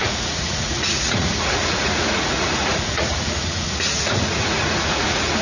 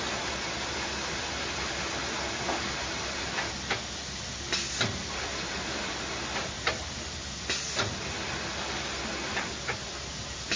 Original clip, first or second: second